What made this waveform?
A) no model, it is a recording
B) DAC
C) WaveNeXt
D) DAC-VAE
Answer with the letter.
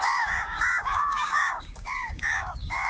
B